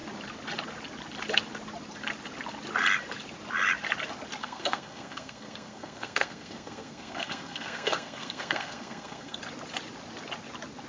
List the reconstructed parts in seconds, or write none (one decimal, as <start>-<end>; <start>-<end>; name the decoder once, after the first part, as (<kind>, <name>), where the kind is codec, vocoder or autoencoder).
4.4-9.4 (codec, SNAC)